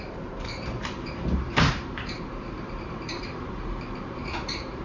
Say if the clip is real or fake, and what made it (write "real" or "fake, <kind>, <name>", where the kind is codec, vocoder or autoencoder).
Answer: fake, vocoder, BigVGAN v2